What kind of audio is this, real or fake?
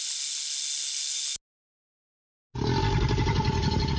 real